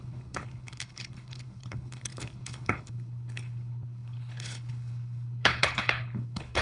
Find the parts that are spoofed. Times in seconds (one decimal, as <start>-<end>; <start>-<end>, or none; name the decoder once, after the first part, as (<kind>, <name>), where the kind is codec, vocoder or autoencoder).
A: 0.0-6.6 (codec, HILCodec)